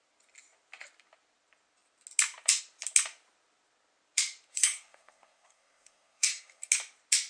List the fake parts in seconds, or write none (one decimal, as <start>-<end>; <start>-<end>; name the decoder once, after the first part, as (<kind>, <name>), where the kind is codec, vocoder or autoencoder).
4.5-6.7 (codec, SNAC)